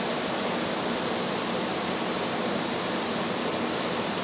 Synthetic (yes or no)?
no